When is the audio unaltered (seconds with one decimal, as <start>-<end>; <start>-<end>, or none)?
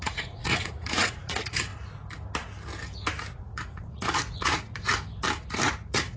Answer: 1.7-3.3; 4.9-5.8